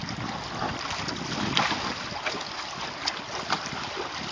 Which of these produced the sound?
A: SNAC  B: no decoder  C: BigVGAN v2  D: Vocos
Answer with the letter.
B